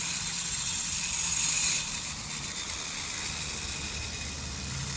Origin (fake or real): real